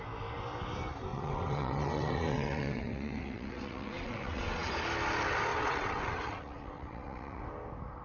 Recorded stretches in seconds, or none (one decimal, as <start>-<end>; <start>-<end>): 0.0-1.1; 4.7-5.5; 7.4-8.0